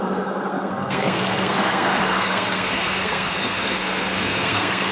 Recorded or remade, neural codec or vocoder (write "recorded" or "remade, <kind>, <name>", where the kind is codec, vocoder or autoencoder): remade, codec, SNAC